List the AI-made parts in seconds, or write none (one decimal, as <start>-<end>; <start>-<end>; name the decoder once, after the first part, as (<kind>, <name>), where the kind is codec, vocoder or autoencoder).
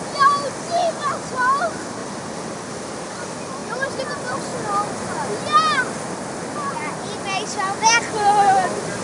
2.0-2.5 (vocoder, BigVGAN v2)